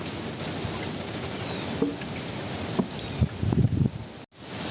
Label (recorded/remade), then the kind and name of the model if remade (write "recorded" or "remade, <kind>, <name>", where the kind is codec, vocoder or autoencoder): recorded